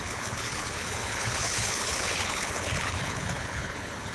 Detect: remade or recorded remade